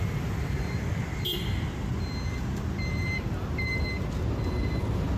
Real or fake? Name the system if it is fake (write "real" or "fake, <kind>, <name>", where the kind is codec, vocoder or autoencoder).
real